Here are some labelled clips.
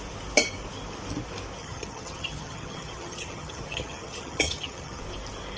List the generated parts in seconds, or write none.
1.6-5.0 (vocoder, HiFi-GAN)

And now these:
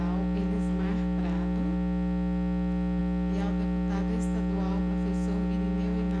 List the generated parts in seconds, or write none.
none

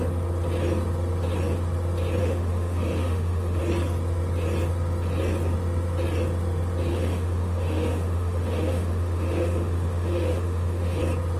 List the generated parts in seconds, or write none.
2.2-3.6 (autoencoder, DAC-VAE); 6.9-11.0

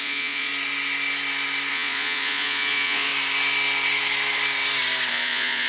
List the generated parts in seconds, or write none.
0.0-0.5 (vocoder, Vocos); 1.7-3.1; 5.1-5.7

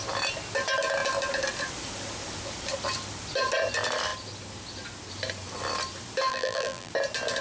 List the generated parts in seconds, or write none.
6.3-6.9 (vocoder, BigVGAN v2)

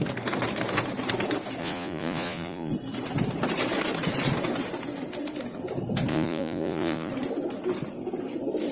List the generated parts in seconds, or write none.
1.6-2.7 (vocoder, Vocos); 6.1-7.1

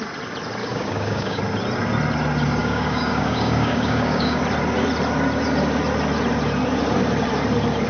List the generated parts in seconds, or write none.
0.6-1.4 (codec, DAC); 2.6-4.4